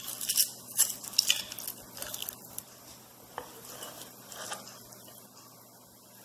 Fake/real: real